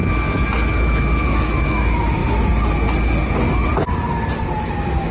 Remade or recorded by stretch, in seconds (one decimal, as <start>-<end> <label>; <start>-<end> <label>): 0.0-0.8 recorded; 0.8-2.2 remade; 2.2-4.6 recorded; 4.6-5.1 remade